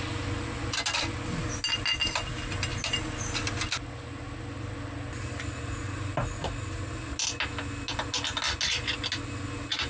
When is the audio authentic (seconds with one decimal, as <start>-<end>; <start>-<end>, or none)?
0.0-9.9